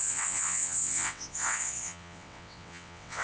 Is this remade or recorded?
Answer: remade